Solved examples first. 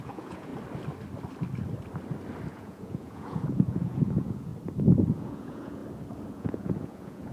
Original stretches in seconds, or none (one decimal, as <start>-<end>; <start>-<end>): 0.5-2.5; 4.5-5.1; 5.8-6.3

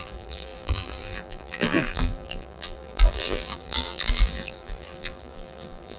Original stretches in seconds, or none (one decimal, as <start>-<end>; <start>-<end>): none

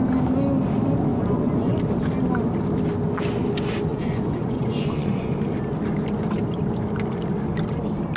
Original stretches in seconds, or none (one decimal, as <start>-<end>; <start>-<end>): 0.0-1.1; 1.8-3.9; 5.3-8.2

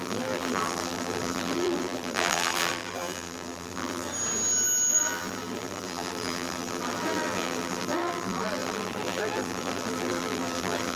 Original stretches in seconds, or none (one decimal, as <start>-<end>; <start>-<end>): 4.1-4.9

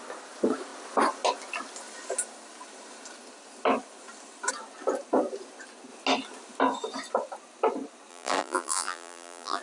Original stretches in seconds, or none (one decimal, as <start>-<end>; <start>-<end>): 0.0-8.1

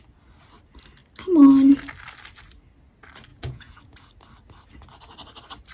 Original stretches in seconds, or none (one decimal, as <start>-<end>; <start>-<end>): 0.0-3.3; 4.1-5.7

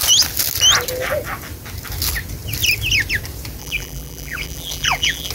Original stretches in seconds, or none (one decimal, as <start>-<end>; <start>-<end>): 0.0-3.6

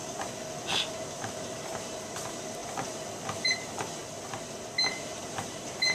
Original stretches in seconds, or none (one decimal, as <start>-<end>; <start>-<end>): 0.0-0.9; 2.6-3.5; 4.0-4.9